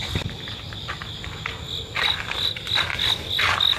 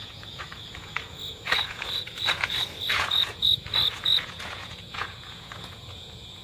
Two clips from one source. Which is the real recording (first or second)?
first